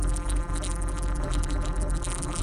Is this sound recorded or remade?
remade